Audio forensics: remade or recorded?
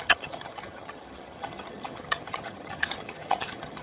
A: remade